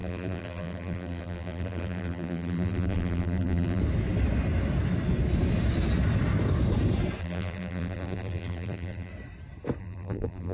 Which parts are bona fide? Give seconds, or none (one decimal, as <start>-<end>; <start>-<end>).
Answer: 3.8-7.2; 9.1-9.8